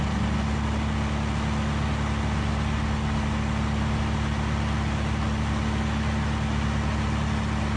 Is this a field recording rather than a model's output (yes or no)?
yes